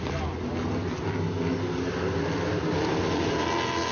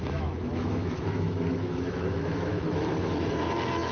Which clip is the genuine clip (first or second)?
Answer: first